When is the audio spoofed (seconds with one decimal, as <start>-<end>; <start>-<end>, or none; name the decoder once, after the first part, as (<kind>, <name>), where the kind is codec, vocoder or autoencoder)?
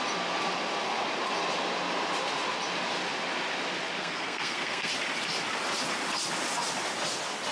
4.0-4.9 (codec, SNAC)